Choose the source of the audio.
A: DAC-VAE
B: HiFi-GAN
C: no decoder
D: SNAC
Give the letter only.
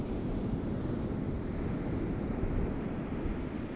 C